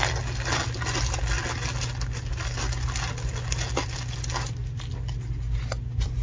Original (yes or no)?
yes